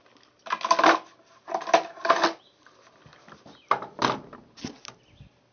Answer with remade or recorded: recorded